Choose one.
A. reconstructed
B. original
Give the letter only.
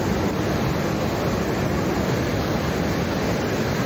B